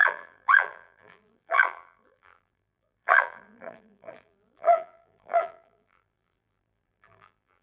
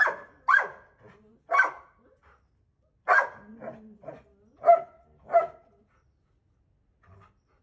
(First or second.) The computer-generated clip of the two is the first